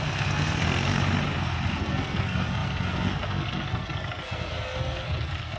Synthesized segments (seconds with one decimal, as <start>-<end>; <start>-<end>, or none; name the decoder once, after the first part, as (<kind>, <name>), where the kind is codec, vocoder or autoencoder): 0.0-0.9 (codec, SNAC); 1.8-5.6